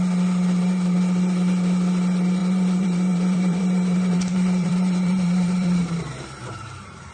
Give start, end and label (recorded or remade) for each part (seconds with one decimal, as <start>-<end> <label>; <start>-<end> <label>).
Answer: 0.0-2.4 recorded; 2.4-7.1 remade